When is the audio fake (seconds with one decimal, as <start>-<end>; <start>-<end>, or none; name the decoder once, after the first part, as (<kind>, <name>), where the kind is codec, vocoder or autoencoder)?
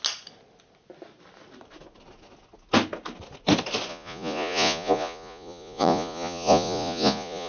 3.9-7.5 (vocoder, Vocos)